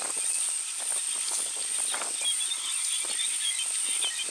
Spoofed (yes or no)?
no